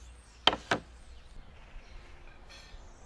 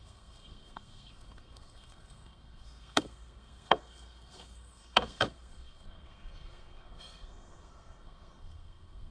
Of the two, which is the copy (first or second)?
second